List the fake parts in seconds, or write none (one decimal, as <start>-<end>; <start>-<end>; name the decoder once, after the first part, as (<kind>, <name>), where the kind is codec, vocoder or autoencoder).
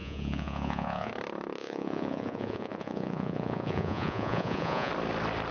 0.0-1.1 (vocoder, Vocos); 1.6-4.9